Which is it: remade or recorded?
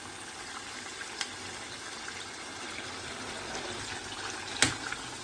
recorded